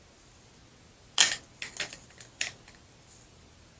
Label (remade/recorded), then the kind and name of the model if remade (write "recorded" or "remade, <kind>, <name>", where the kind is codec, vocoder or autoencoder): recorded